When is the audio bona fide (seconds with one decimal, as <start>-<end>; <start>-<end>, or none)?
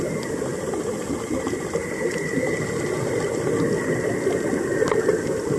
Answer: 0.0-5.6